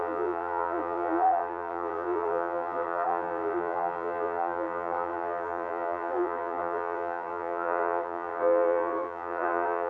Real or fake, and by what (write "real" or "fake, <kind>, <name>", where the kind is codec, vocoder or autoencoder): fake, vocoder, BigVGAN v2